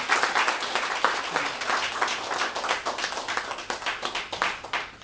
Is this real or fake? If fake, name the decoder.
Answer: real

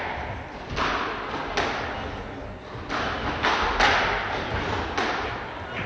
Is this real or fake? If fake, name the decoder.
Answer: real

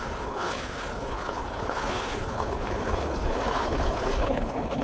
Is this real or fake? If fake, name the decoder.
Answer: fake, codec, HILCodec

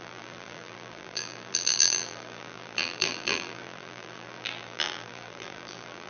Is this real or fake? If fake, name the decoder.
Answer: fake, vocoder, BigVGAN v2